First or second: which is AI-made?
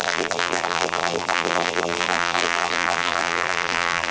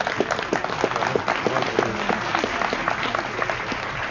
first